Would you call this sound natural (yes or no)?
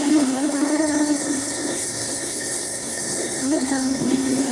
no